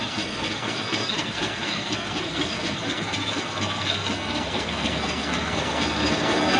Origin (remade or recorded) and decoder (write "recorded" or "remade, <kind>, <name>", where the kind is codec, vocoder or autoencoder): remade, codec, SNAC